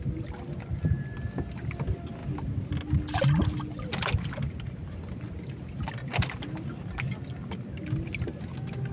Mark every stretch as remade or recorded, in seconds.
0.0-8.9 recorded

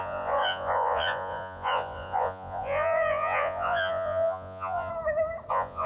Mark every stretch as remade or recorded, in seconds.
0.0-4.9 remade; 4.9-5.5 recorded; 5.5-5.9 remade

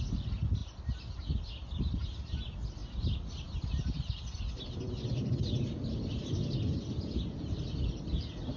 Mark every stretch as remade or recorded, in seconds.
0.0-8.6 recorded

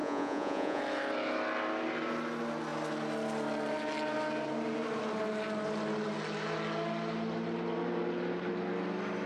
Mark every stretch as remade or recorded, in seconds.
0.0-0.8 remade; 0.8-9.3 recorded